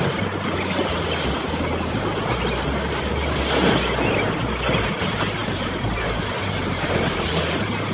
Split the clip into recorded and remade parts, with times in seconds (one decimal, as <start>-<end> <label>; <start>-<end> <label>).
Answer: 0.0-5.4 recorded; 5.4-6.2 remade; 6.2-7.9 recorded